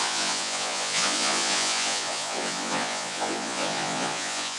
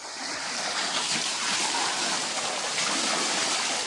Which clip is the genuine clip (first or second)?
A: second